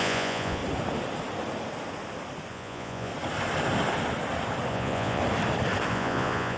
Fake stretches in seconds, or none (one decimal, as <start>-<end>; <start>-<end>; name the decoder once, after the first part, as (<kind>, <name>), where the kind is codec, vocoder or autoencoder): 0.0-0.6 (vocoder, Vocos); 2.5-3.1; 4.7-5.2; 5.9-6.6